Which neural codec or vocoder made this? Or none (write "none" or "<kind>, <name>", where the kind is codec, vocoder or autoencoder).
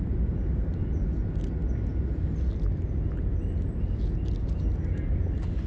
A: none